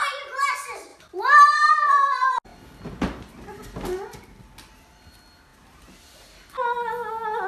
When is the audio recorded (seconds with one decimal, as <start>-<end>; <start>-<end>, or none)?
0.0-7.5